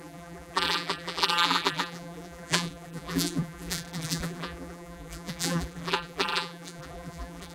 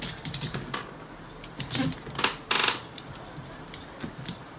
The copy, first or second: first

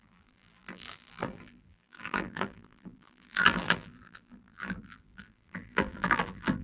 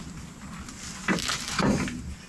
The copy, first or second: first